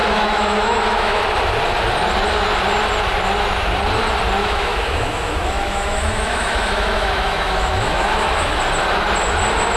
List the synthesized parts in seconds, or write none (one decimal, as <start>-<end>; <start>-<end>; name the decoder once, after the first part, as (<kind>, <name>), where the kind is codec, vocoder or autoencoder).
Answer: 0.0-1.2 (autoencoder, DAC-VAE); 4.4-8.6